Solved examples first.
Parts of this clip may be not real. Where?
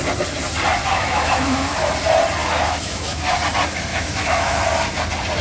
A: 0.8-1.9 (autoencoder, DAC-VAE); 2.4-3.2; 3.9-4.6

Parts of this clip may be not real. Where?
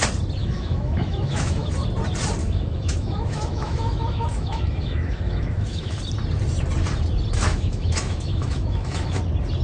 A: 0.4-1.7 (autoencoder, DAC-VAE); 2.4-6.0; 7.5-9.2